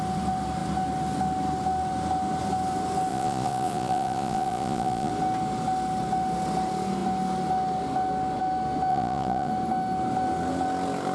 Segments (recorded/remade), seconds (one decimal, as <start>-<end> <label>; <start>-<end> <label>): 0.0-3.1 recorded; 3.1-5.1 remade; 5.1-8.9 recorded; 8.9-9.5 remade; 9.5-11.1 recorded